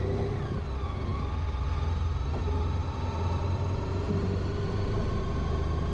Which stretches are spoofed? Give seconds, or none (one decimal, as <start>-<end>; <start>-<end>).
none